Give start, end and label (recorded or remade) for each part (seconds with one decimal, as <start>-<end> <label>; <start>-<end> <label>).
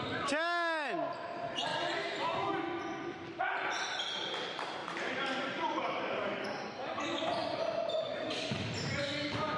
0.0-4.8 recorded; 4.8-7.0 remade; 7.0-9.6 recorded